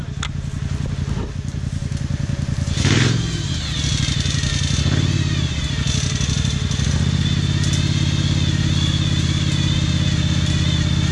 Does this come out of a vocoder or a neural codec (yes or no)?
no